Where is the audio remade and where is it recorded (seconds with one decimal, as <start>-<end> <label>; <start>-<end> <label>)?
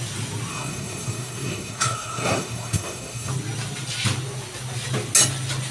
0.0-0.5 recorded; 0.5-3.3 remade; 3.3-5.7 recorded